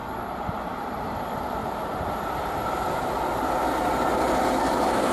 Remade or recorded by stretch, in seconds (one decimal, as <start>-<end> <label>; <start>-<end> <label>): 0.0-1.0 remade; 1.0-1.6 recorded; 1.6-2.1 remade; 2.1-5.1 recorded